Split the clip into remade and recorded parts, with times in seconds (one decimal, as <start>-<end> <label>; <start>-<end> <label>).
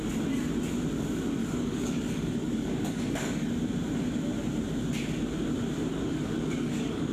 0.0-1.4 recorded; 1.4-3.5 remade; 3.5-5.9 recorded; 5.9-7.1 remade